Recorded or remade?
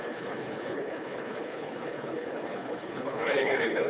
remade